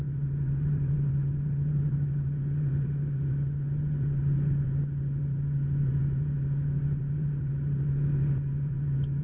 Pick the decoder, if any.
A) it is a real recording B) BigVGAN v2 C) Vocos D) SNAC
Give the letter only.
B